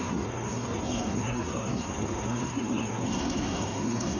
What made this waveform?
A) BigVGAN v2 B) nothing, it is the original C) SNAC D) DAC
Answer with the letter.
C